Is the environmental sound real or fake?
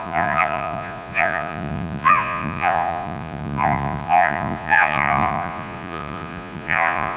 fake